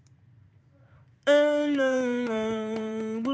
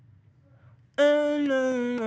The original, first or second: second